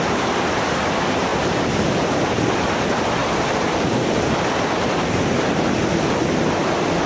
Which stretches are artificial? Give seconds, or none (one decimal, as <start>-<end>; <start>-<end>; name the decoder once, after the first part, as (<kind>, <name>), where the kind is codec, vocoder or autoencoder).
none